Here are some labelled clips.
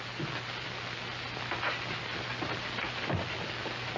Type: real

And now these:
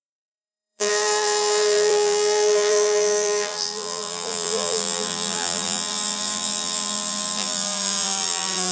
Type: fake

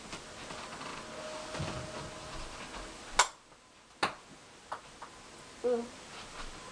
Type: real